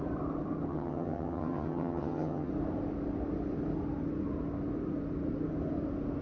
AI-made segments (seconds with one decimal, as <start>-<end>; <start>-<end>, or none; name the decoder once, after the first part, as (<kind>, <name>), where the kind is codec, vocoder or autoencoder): 0.7-2.5 (vocoder, HiFi-GAN)